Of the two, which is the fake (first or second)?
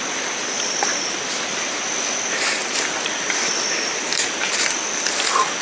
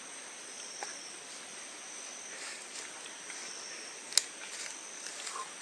first